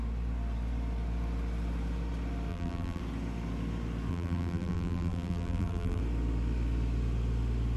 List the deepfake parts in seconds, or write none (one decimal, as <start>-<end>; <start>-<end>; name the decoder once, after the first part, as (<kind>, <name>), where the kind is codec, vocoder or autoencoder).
2.5-3.0 (vocoder, BigVGAN v2); 4.1-6.0